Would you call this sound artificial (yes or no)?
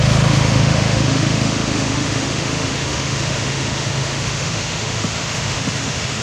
yes